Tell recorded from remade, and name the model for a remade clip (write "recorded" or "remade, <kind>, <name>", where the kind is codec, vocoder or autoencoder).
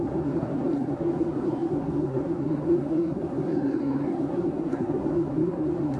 remade, codec, SNAC